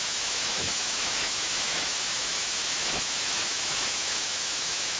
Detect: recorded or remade remade